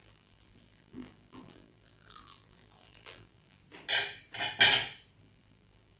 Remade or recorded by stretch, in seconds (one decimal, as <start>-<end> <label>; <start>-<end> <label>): 0.0-3.6 remade; 3.6-5.2 recorded; 5.2-6.0 remade